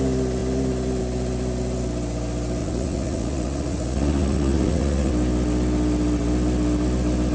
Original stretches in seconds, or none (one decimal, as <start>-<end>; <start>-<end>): 0.0-2.6; 5.1-7.3